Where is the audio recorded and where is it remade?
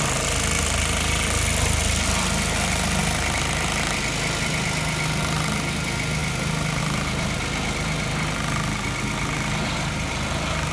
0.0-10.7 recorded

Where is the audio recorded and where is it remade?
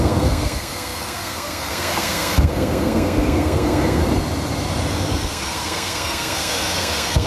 0.0-4.0 remade; 4.0-4.9 recorded; 4.9-7.3 remade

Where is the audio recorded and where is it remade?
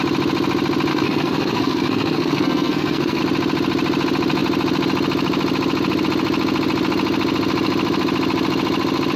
0.0-0.9 recorded; 0.9-3.2 remade; 3.2-9.2 recorded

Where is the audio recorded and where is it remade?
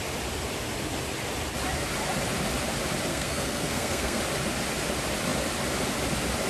0.0-3.1 recorded; 3.1-4.2 remade; 4.2-6.5 recorded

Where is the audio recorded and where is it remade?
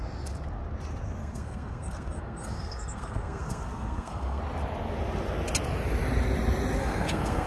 0.0-1.2 recorded; 1.2-4.4 remade; 4.4-6.8 recorded; 6.8-7.5 remade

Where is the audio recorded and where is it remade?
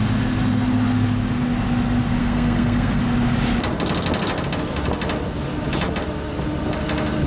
0.0-2.2 recorded; 2.2-3.0 remade; 3.0-7.3 recorded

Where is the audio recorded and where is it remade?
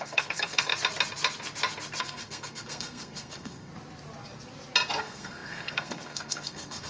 0.0-0.7 remade; 0.7-2.0 recorded; 2.0-3.7 remade; 3.7-5.0 recorded; 5.0-6.9 remade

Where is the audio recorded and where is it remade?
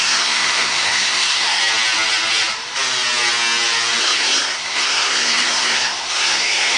0.0-1.6 remade; 1.6-4.0 recorded; 4.0-6.8 remade